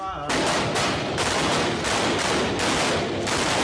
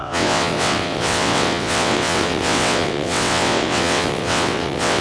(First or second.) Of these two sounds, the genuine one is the first